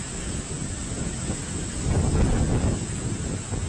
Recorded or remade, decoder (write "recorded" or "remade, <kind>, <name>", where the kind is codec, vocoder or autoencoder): recorded